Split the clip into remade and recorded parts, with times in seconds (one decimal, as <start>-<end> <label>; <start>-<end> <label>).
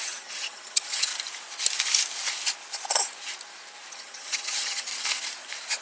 0.0-1.1 remade; 1.1-3.9 recorded; 3.9-4.9 remade; 4.9-5.8 recorded